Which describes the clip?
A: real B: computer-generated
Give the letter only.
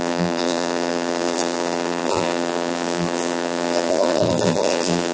B